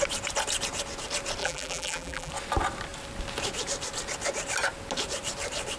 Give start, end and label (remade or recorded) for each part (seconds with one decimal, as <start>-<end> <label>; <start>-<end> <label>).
0.0-1.4 recorded; 1.4-2.3 remade; 2.3-5.8 recorded